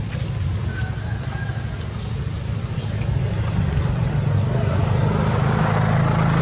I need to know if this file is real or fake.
real